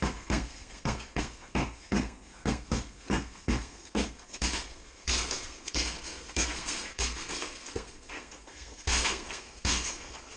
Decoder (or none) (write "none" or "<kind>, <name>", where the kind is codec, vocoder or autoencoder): codec, SNAC